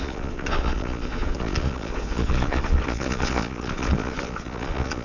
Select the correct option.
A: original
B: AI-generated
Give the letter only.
B